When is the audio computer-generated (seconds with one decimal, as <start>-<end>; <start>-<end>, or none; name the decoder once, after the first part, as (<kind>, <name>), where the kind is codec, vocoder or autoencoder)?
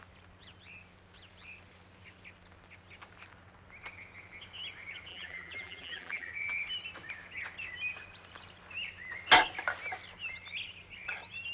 5.1-6.3 (vocoder, BigVGAN v2)